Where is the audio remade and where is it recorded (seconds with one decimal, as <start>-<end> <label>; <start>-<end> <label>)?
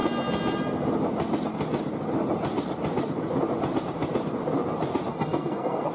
0.0-5.1 recorded; 5.1-5.9 remade